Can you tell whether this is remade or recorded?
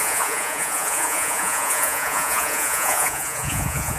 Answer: remade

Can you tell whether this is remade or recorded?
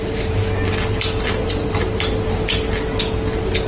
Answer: recorded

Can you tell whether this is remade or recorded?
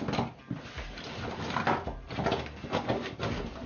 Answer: recorded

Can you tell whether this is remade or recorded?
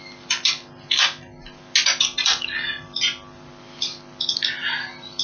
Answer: recorded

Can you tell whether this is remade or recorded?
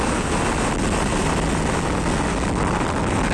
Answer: recorded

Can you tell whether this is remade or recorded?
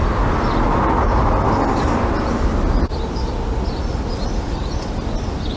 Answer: recorded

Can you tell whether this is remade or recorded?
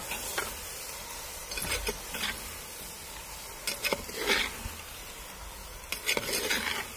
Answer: recorded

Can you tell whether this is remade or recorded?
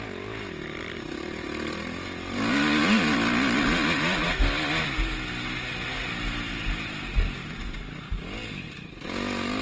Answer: recorded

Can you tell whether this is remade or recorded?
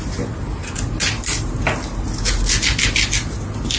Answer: recorded